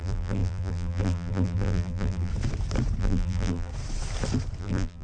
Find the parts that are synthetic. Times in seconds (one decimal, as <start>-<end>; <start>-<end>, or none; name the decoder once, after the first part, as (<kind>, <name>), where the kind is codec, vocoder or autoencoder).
0.0-2.3 (vocoder, BigVGAN v2); 3.0-3.7; 4.6-5.0